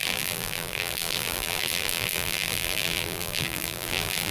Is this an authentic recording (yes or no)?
no